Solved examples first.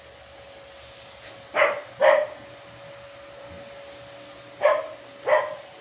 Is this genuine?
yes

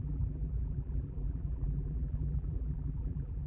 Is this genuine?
no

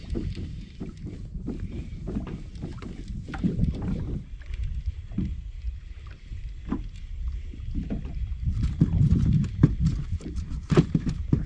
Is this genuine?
no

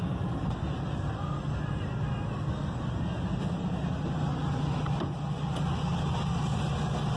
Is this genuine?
yes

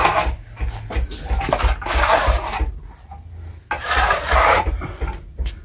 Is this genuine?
yes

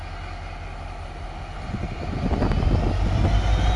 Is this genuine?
yes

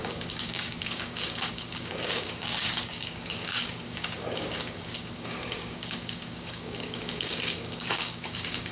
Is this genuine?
no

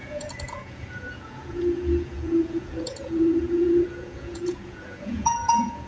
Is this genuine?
no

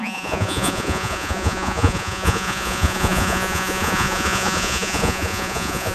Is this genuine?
no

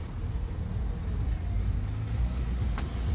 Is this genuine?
yes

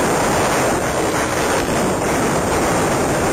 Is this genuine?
yes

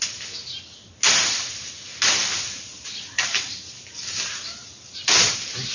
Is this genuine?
yes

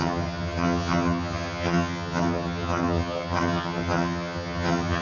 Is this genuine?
no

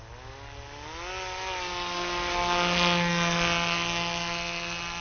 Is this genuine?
yes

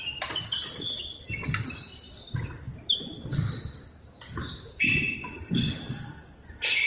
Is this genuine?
yes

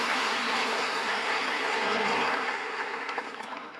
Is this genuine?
no